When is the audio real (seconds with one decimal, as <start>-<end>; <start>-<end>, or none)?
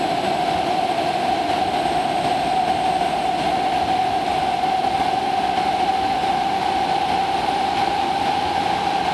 0.0-9.1